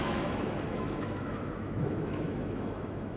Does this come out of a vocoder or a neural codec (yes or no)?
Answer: yes